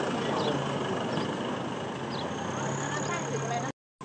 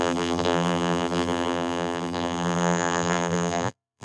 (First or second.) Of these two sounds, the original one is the first